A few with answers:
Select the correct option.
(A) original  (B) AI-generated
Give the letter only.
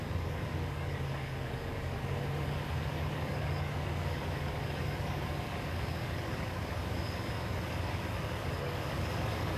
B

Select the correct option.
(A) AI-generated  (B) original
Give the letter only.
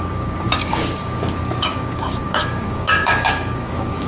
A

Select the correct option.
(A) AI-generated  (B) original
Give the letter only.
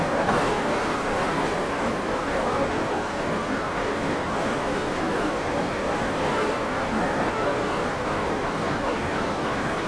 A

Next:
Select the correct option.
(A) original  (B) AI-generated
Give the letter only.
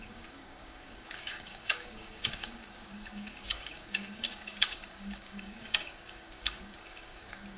B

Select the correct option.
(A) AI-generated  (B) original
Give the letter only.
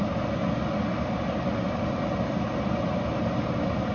B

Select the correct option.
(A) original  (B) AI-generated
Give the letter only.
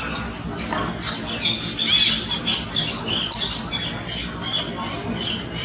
A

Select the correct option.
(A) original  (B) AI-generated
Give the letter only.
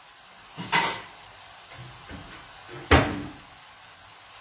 A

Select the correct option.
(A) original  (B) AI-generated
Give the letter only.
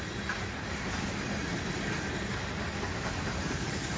A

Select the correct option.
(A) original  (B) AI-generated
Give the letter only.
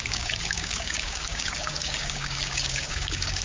B